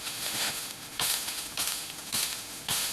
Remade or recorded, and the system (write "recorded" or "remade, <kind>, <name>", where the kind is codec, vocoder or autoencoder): remade, autoencoder, DAC-VAE